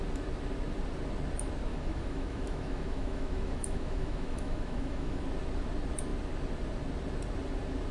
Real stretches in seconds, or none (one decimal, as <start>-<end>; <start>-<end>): 0.0-1.7; 5.2-7.9